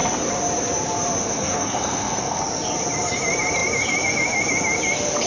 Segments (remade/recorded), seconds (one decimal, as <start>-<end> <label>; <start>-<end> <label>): 0.0-1.2 recorded; 1.2-2.4 remade; 2.4-5.3 recorded